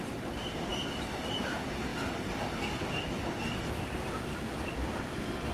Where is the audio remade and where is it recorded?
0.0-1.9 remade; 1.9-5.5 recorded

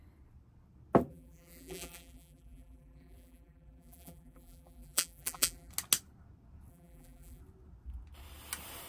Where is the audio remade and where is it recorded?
0.0-1.1 recorded; 1.1-5.7 remade; 5.7-6.7 recorded; 6.7-7.4 remade; 7.4-8.9 recorded

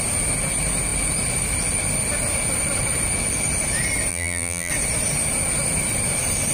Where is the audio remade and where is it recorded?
0.0-4.1 recorded; 4.1-4.7 remade; 4.7-6.5 recorded

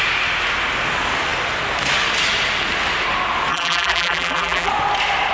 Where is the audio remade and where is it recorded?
0.0-3.5 recorded; 3.5-4.7 remade; 4.7-5.3 recorded